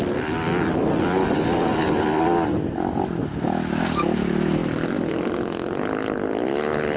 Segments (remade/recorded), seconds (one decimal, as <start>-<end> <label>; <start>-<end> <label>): 0.0-7.0 recorded